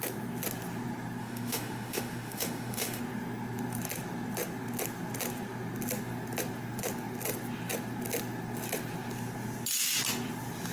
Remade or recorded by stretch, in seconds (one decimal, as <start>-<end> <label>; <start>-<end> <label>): 0.0-1.2 recorded; 1.2-3.0 remade; 3.0-10.7 recorded